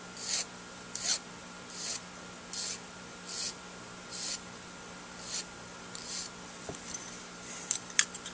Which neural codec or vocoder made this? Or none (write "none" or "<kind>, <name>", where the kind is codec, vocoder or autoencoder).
none